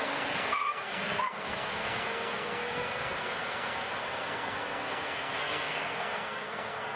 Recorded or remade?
remade